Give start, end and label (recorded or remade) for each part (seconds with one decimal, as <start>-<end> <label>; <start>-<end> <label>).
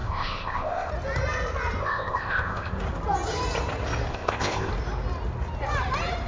0.0-0.9 remade; 0.9-1.8 recorded; 1.8-2.7 remade; 2.7-4.1 recorded; 4.1-4.7 remade; 4.7-6.3 recorded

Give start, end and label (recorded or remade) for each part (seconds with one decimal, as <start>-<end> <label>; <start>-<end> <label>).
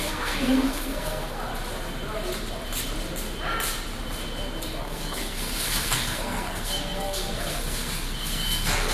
0.0-1.5 remade; 1.5-4.8 recorded; 4.8-8.9 remade